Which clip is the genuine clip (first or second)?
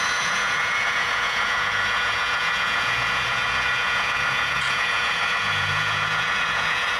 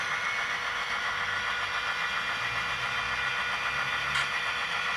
second